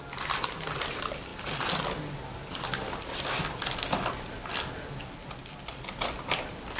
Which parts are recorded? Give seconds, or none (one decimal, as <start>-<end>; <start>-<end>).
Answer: 0.0-6.8